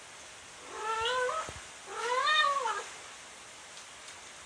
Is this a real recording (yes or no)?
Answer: yes